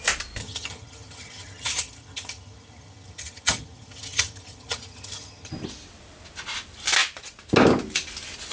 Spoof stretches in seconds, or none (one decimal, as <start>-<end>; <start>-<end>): 0.4-5.5